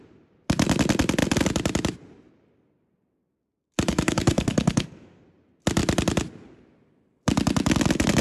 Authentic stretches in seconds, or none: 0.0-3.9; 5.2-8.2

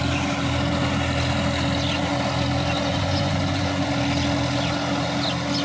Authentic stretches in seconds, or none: 0.0-2.9; 3.9-5.6

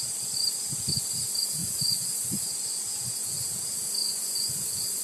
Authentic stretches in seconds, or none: 0.0-1.6; 3.5-4.0

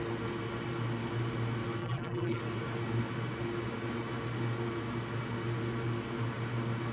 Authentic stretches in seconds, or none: 0.0-1.8; 2.4-6.9

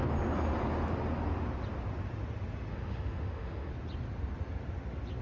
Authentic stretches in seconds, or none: 0.0-2.7; 3.7-5.2

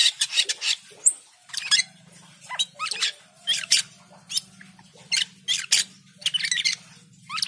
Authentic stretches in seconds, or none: 0.5-1.4; 3.8-7.5

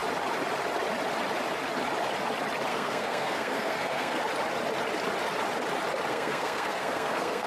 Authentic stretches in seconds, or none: 0.0-2.7; 4.2-6.1

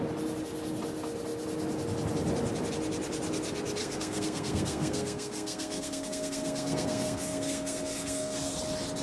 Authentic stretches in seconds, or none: 0.0-3.8; 8.5-9.0